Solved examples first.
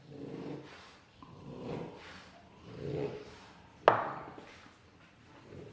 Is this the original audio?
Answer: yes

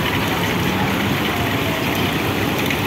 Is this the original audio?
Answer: yes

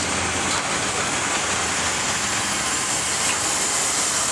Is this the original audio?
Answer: yes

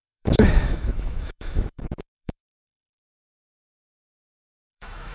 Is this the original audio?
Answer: no